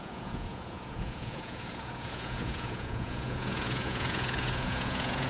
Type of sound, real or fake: fake